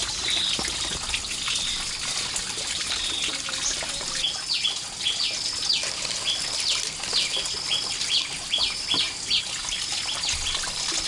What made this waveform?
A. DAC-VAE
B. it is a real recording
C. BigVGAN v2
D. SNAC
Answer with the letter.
B